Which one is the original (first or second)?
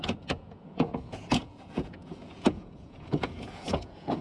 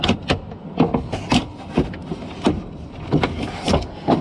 second